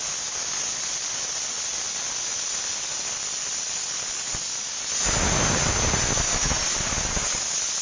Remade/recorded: recorded